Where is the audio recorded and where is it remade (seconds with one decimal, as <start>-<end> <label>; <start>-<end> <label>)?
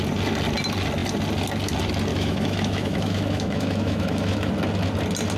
0.0-2.1 recorded; 2.1-4.5 remade; 4.5-5.4 recorded